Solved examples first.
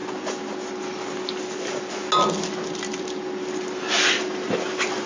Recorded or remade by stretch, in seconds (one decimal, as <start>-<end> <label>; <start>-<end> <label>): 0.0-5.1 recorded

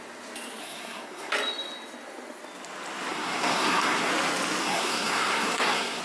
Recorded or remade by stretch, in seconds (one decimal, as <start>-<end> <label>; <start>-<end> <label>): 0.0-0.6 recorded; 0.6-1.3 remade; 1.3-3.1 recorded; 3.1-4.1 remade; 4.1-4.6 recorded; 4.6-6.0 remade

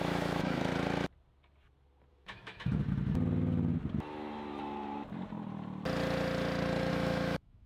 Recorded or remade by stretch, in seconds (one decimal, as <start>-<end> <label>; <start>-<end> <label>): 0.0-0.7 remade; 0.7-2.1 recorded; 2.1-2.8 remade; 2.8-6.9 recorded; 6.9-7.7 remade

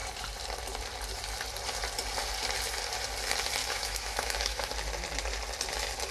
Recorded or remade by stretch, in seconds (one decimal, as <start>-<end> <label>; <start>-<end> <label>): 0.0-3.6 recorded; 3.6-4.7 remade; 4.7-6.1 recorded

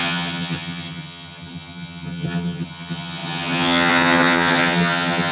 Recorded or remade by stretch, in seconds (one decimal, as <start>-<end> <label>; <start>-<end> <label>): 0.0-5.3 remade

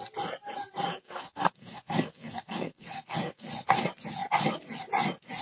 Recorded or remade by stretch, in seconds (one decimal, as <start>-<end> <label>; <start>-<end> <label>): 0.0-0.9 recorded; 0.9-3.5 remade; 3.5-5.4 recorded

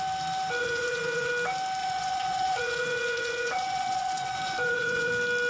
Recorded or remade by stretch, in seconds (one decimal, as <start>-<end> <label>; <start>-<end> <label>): 0.0-0.6 recorded; 0.6-1.3 remade; 1.3-1.8 recorded; 1.8-5.1 remade; 5.1-5.5 recorded